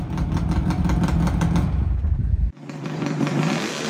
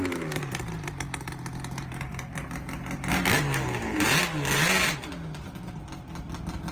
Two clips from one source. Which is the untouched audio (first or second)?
second